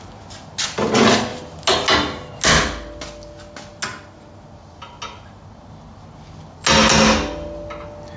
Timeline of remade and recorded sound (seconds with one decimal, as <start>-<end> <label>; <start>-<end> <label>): 0.0-8.2 recorded